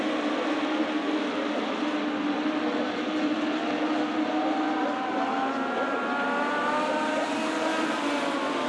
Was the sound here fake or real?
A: real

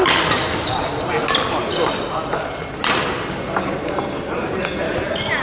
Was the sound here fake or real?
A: real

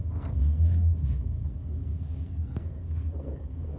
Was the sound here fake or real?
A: fake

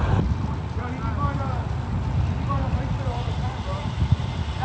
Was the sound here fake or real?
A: real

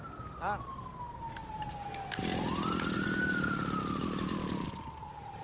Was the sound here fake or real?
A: real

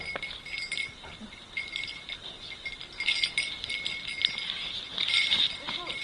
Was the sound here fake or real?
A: real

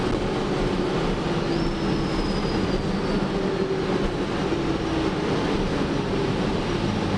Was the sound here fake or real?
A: real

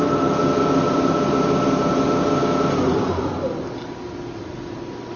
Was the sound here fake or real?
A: real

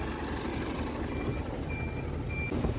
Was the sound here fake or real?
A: real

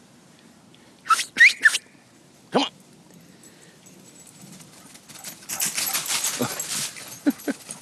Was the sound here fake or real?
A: real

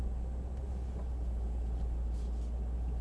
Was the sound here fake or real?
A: real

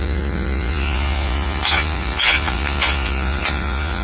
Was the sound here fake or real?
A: fake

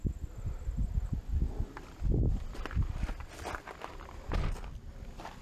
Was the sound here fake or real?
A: real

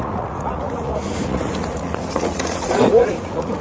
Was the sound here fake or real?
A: fake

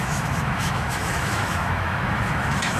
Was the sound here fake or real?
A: fake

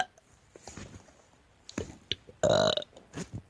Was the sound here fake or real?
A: real